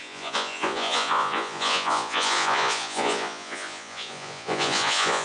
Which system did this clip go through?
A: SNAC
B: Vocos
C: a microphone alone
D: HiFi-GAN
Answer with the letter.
B